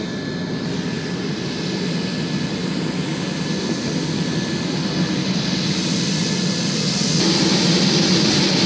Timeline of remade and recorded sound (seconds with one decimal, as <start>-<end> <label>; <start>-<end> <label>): 0.0-8.7 recorded